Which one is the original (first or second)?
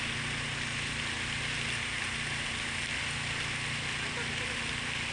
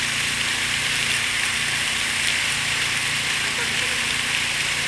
first